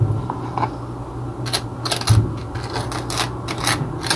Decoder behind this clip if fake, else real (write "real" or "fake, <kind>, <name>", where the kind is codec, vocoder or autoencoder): real